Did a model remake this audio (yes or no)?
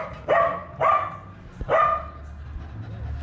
no